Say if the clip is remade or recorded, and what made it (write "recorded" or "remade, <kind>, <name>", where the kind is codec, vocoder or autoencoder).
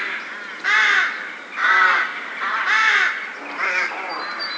recorded